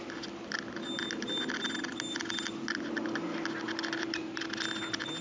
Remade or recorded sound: recorded